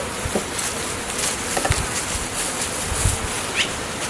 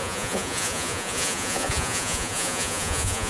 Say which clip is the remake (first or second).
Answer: second